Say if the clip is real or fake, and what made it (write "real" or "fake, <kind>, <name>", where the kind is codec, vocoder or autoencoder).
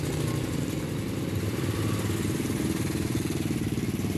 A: real